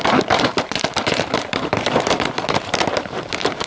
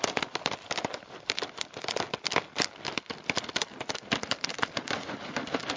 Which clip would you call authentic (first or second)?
second